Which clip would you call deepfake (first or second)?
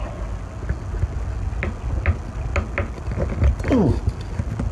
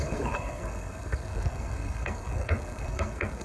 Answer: second